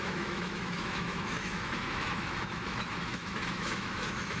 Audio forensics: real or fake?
fake